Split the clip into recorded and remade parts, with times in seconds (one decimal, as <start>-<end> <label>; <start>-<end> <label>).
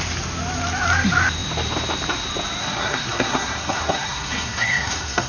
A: 0.0-2.6 recorded; 2.6-5.3 remade